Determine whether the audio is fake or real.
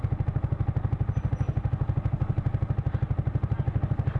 real